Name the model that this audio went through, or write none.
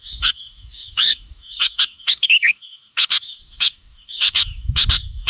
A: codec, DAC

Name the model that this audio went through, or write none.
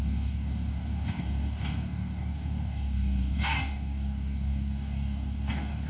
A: codec, DAC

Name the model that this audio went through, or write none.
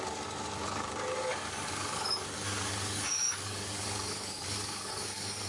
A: codec, DAC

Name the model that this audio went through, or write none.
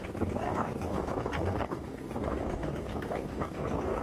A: codec, DAC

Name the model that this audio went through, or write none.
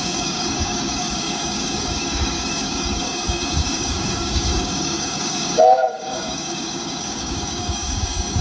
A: codec, DAC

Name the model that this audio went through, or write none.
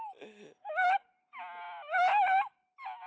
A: none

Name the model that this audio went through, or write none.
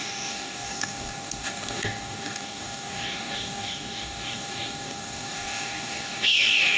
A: codec, DAC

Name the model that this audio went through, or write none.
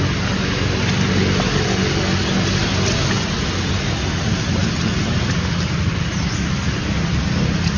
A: none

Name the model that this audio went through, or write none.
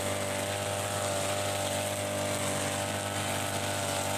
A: none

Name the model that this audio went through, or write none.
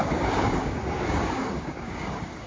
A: codec, DAC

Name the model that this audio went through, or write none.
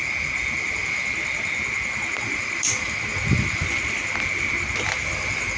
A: none